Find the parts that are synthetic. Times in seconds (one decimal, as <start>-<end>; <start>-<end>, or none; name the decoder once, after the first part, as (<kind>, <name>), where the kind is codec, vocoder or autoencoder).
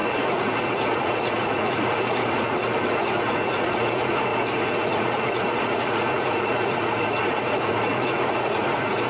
0.0-9.1 (vocoder, Vocos)